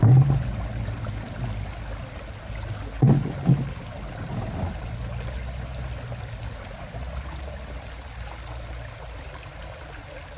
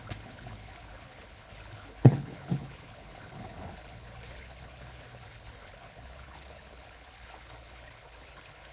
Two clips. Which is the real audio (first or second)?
first